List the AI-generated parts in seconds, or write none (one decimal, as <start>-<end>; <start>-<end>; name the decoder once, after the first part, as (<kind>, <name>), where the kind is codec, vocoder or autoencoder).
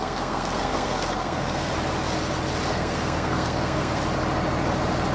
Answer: 0.0-1.7 (codec, SNAC); 2.7-4.0